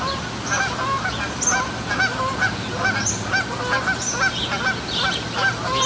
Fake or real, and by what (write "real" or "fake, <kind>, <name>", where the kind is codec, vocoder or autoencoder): real